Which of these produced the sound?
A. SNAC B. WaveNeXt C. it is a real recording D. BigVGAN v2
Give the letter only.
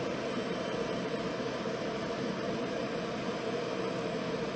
D